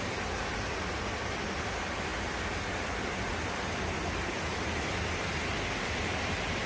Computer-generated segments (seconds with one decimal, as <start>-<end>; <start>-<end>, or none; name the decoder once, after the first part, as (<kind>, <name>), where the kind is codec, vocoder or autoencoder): none